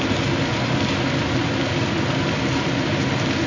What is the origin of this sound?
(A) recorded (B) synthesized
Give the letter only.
A